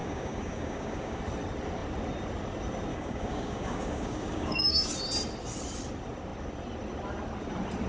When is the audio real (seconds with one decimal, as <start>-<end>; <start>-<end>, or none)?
1.2-2.9; 4.9-7.9